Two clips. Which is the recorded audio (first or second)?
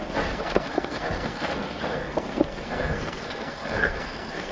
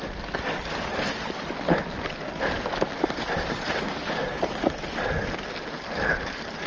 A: second